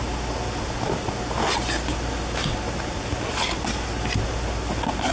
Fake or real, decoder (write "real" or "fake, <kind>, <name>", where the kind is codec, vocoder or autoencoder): real